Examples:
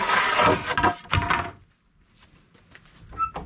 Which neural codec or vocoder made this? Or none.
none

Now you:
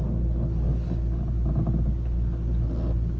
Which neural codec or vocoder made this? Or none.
none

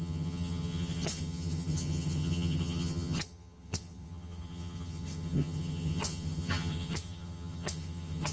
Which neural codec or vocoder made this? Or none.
vocoder, HiFi-GAN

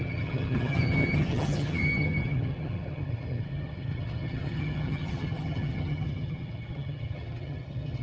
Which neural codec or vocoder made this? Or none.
vocoder, HiFi-GAN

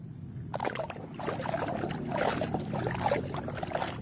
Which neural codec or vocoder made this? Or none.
none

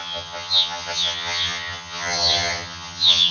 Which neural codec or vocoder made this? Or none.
vocoder, HiFi-GAN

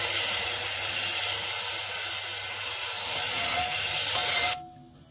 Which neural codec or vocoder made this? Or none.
none